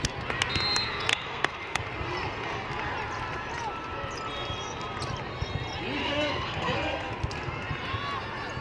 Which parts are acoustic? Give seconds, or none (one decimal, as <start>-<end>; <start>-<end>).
0.0-1.1; 1.8-6.0; 7.1-8.6